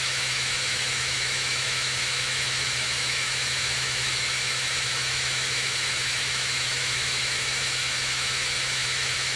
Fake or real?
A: fake